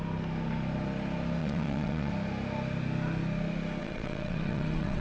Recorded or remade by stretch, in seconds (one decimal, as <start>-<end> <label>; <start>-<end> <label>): 0.0-1.4 recorded; 1.4-2.1 remade; 2.1-3.8 recorded; 3.8-5.0 remade